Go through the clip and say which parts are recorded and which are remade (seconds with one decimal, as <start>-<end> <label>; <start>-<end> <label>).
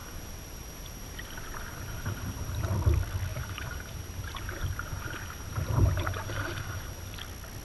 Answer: 0.0-2.7 remade; 2.7-3.3 recorded; 3.3-7.1 remade; 7.1-7.6 recorded